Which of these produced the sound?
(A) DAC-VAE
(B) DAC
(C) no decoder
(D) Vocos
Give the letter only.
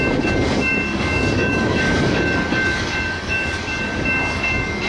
B